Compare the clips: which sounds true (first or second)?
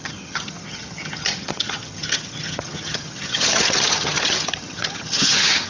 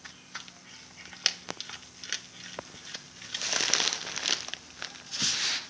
second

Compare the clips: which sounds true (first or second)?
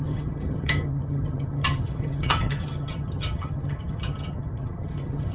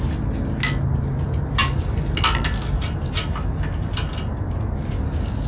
second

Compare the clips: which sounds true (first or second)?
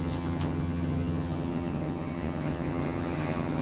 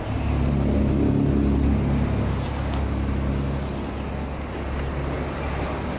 second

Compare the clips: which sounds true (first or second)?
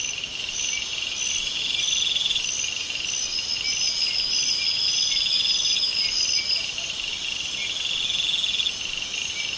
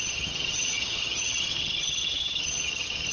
first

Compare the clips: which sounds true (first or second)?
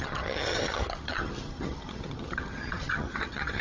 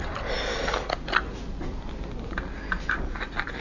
second